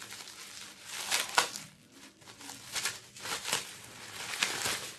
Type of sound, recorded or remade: recorded